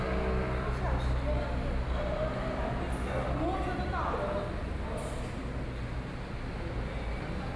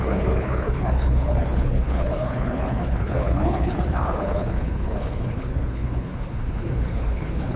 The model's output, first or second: second